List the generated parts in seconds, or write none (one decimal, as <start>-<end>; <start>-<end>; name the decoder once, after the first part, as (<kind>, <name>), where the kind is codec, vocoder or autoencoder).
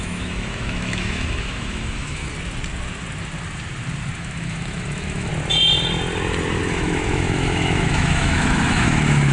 0.0-2.2 (autoencoder, DAC-VAE); 4.2-5.3; 6.6-9.3